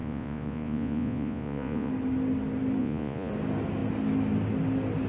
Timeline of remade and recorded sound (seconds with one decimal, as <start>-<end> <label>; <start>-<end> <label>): 0.0-1.9 remade; 1.9-2.8 recorded; 2.8-3.3 remade; 3.3-5.1 recorded